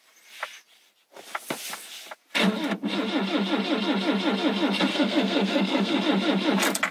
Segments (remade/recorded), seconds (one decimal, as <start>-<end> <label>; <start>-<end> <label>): 0.0-4.9 recorded; 4.9-6.0 remade; 6.0-6.9 recorded